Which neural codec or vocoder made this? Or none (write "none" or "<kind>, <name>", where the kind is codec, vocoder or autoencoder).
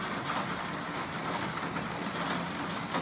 none